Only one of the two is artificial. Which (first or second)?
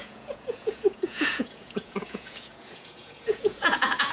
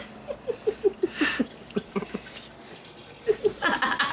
first